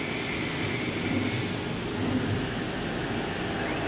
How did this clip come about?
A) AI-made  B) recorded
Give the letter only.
B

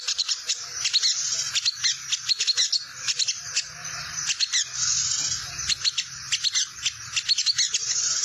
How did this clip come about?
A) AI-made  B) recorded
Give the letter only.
B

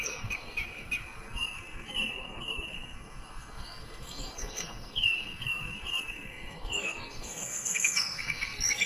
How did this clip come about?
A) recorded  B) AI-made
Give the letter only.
B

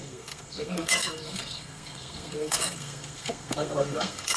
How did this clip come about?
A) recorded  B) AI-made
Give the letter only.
B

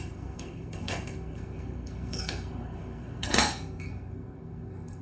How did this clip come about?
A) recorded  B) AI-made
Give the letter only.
B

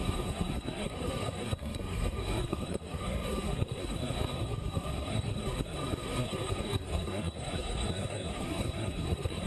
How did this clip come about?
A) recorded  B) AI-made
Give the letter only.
B